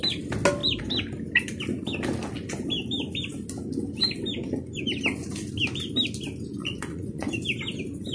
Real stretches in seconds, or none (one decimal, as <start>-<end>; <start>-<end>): 0.0-6.6; 7.3-8.1